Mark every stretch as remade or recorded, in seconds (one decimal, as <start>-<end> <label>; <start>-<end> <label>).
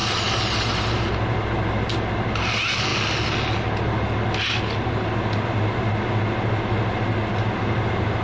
0.0-8.2 recorded